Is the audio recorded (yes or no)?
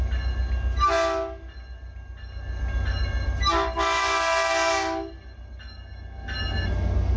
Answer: yes